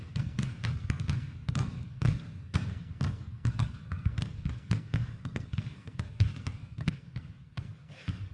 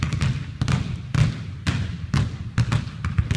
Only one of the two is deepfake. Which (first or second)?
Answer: first